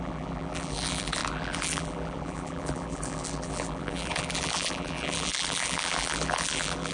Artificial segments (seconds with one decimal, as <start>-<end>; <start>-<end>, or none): 0.0-6.9